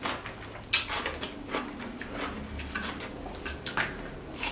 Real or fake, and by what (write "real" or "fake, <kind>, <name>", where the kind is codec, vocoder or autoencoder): real